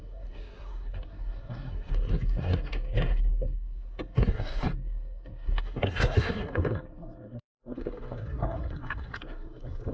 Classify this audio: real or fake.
fake